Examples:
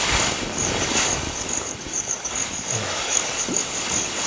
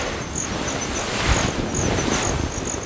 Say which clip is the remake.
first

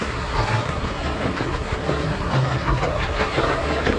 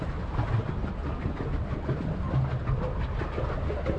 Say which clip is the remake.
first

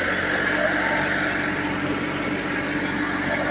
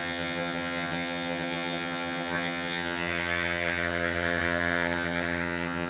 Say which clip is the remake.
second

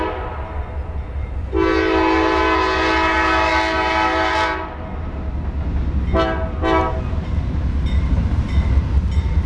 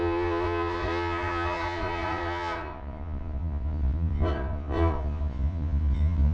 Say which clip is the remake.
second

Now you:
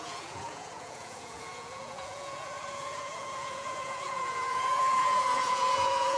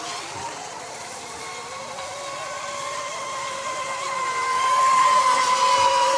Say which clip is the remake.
first